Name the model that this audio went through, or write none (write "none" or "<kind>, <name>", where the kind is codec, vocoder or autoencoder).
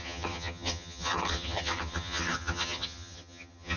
vocoder, HiFi-GAN